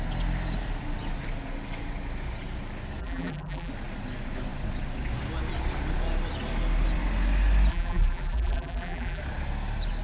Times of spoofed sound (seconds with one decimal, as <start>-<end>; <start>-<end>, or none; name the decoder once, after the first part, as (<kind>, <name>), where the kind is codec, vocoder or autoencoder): 3.0-3.7 (vocoder, BigVGAN v2); 7.7-9.2